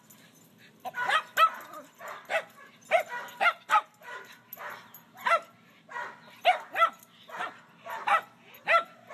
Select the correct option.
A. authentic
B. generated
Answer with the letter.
A